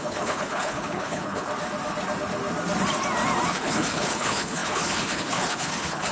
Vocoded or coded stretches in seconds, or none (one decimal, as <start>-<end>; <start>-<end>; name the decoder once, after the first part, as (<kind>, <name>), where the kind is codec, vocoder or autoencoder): 0.0-1.5 (codec, HILCodec); 3.5-6.1